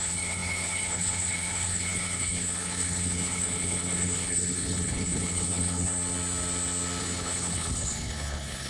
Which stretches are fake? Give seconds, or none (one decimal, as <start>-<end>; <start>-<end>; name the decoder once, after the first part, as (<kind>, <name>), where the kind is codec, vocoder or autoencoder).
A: 0.0-5.9 (codec, HILCodec); 7.0-8.7

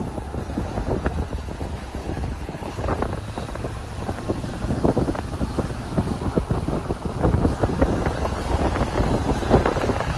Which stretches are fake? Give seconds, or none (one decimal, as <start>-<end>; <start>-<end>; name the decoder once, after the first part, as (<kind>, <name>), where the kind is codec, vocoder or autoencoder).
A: 2.0-2.9 (codec, HILCodec)